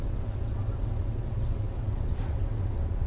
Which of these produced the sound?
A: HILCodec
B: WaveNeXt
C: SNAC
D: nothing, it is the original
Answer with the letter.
B